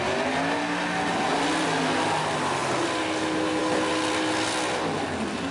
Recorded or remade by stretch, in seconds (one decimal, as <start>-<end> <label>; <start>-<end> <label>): 0.0-5.5 recorded